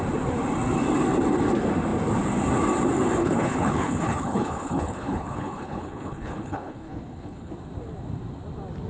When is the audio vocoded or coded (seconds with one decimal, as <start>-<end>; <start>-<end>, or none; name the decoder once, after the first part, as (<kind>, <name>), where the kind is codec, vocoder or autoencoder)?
3.2-7.5 (codec, HILCodec)